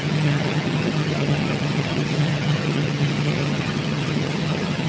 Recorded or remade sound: remade